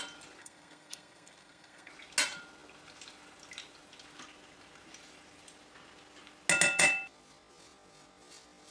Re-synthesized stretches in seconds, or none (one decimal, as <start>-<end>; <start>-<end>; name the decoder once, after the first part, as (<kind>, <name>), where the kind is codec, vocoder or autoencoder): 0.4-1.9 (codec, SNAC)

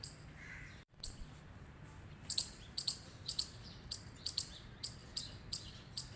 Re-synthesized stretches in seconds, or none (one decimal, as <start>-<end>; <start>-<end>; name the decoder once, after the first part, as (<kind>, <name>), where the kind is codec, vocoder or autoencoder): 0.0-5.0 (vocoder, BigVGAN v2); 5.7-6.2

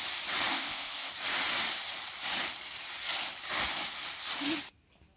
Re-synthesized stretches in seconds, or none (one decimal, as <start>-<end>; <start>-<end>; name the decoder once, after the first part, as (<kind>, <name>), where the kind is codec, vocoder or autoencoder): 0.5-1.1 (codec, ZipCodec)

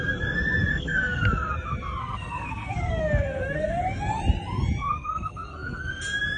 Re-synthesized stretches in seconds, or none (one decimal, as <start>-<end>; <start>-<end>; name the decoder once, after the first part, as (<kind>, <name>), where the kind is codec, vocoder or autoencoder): 0.7-1.3 (codec, SNAC); 2.0-3.8; 4.8-6.0